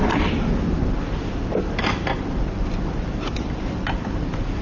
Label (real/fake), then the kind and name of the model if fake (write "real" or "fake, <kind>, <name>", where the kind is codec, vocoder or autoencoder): fake, vocoder, BigVGAN v2